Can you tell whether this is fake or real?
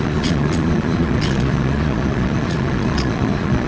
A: fake